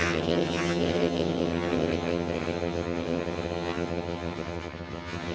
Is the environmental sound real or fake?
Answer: fake